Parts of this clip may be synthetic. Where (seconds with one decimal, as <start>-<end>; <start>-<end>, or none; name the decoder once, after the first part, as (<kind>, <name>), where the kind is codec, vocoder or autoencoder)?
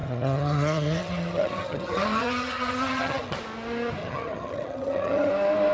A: 0.0-3.4 (vocoder, HiFi-GAN); 4.0-5.3